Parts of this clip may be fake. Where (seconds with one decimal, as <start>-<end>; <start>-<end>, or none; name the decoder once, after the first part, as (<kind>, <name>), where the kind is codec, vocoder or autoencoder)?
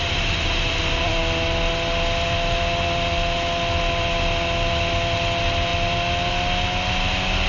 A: none